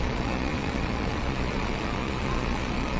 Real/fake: fake